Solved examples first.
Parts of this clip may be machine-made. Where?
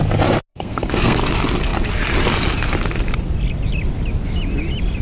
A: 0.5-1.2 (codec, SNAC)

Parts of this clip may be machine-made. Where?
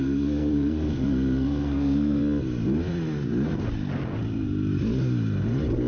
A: 0.0-2.2 (codec, SNAC)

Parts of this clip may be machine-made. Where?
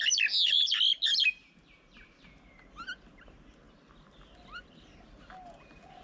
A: none